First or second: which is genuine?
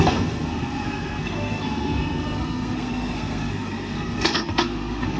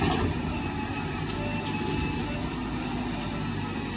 second